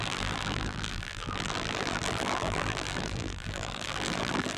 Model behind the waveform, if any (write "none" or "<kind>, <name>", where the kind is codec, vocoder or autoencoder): vocoder, BigVGAN v2